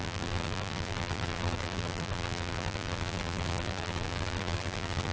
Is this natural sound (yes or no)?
no